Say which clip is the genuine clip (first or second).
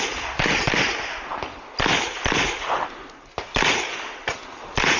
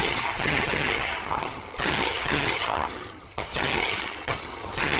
first